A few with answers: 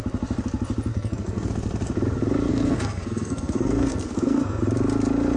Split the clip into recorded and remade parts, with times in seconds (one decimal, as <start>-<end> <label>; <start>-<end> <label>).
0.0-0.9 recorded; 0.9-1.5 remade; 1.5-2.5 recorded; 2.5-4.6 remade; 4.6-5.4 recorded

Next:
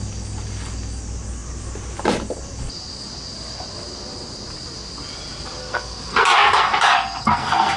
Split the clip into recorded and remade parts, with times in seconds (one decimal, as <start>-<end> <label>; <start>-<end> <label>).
0.0-5.6 recorded; 5.6-7.8 remade

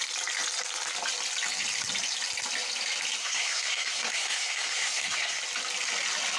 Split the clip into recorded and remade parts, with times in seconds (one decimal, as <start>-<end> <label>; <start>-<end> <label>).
0.0-3.2 recorded; 3.2-5.4 remade; 5.4-6.4 recorded